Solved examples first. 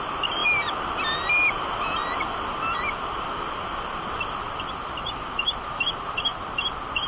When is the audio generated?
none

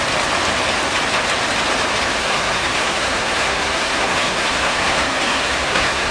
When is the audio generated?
2.2-6.1 (codec, SNAC)

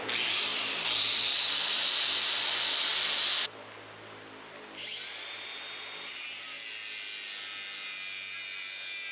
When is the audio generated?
none

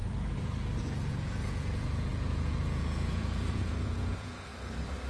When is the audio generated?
0.8-4.5 (vocoder, Vocos)